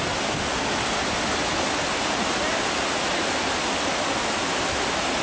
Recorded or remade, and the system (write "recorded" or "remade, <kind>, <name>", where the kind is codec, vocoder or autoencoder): recorded